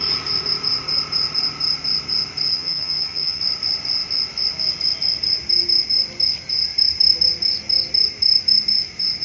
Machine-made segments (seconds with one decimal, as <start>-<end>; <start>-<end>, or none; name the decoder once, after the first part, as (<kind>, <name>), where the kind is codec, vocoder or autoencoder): 2.5-3.4 (vocoder, HiFi-GAN)

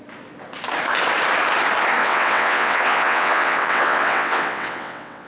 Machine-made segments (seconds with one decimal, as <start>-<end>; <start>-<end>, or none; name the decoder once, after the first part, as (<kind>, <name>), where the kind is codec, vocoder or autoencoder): 2.0-5.3 (vocoder, WaveNeXt)